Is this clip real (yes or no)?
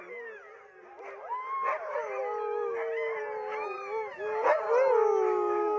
yes